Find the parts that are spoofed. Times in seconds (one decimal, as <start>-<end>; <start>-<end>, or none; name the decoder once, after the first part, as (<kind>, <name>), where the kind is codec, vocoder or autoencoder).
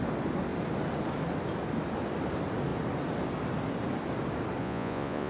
4.6-5.3 (vocoder, Vocos)